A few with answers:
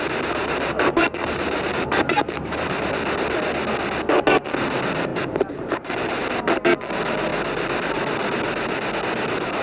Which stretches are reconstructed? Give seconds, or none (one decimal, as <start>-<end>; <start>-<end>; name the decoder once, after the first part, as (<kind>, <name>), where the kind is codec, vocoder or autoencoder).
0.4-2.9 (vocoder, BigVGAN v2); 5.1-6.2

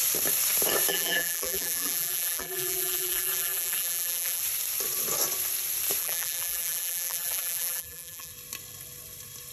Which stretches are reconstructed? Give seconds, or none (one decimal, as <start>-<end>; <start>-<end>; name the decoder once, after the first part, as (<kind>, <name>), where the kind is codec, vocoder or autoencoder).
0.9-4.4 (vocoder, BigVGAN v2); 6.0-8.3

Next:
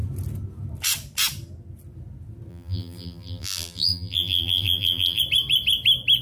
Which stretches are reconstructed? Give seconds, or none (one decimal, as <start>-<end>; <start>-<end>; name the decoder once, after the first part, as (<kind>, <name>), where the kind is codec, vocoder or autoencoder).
2.5-5.2 (vocoder, BigVGAN v2)

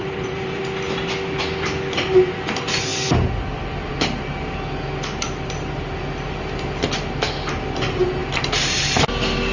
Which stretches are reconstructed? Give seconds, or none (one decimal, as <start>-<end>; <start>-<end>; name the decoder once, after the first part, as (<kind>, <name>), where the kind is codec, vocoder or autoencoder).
0.0-0.6 (vocoder, BigVGAN v2)

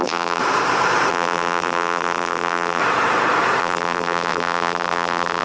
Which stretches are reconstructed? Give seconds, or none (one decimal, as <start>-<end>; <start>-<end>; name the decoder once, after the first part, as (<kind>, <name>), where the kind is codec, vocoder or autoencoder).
0.0-0.4 (vocoder, BigVGAN v2); 1.1-2.8; 3.6-5.4